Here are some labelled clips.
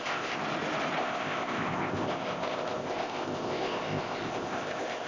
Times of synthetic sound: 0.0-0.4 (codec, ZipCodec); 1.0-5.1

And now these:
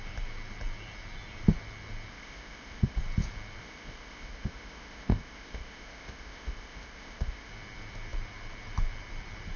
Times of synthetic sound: 2.1-3.0 (codec, ZipCodec); 3.6-7.5

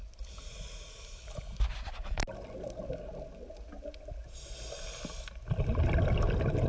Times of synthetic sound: none